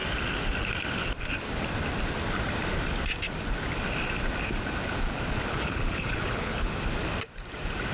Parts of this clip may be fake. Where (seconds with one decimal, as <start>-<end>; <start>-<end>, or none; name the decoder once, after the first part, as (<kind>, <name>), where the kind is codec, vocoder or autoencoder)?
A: 5.5-6.8 (codec, HILCodec)